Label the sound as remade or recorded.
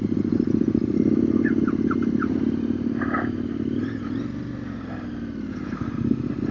recorded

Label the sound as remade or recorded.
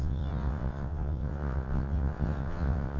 remade